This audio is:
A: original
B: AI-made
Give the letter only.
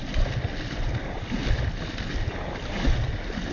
A